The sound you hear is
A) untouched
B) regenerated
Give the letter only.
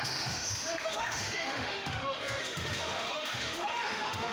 B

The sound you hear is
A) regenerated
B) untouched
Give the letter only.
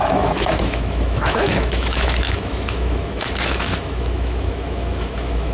A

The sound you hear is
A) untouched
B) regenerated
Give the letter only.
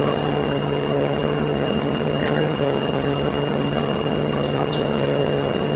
B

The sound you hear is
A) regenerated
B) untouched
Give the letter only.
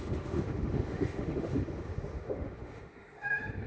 A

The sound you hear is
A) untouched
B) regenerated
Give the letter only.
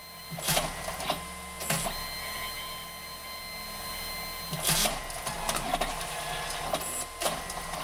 A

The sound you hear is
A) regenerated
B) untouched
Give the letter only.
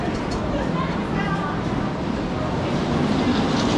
B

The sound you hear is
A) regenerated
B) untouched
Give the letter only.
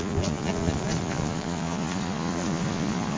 A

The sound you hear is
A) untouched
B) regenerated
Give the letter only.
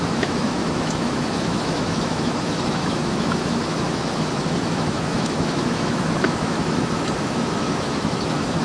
B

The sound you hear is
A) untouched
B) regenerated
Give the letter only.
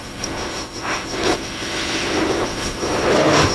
B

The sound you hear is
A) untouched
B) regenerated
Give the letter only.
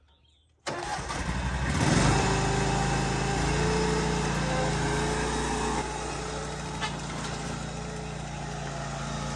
A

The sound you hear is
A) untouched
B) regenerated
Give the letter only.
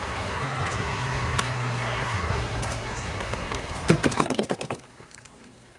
B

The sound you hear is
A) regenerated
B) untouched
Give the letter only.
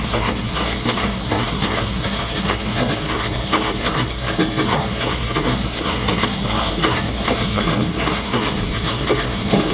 A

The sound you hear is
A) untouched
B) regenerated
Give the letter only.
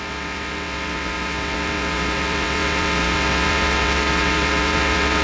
B